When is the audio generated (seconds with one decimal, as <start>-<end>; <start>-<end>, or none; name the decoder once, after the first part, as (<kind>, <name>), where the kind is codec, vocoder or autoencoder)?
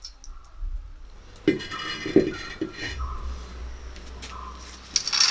none